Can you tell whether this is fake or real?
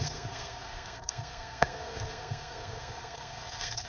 fake